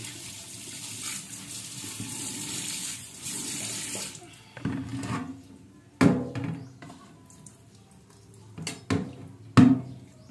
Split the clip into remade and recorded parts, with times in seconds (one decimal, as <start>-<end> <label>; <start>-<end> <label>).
0.0-2.8 recorded; 2.8-3.6 remade; 3.6-10.3 recorded